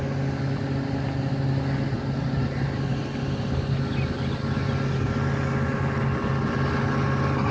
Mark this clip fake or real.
real